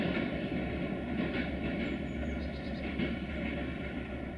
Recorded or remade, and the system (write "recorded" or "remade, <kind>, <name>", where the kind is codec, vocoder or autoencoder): recorded